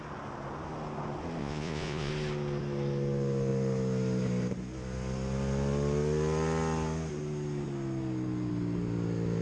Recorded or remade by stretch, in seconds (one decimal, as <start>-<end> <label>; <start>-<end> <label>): 0.0-1.4 recorded; 1.4-2.1 remade; 2.1-9.4 recorded